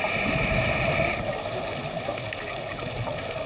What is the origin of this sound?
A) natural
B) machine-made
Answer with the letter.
A